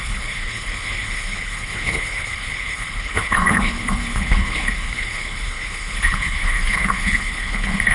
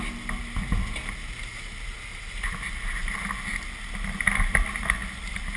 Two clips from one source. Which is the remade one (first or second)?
first